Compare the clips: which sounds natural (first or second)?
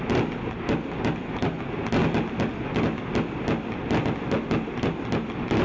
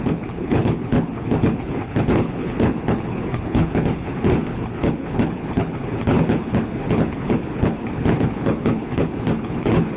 first